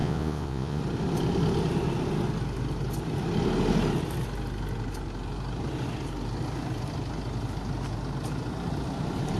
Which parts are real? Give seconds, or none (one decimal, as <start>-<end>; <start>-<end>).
0.8-9.4